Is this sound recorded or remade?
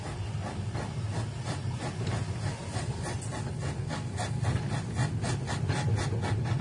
recorded